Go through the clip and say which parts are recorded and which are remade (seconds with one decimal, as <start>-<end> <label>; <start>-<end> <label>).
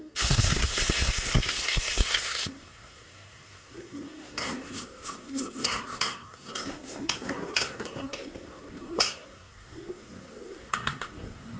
0.0-11.6 remade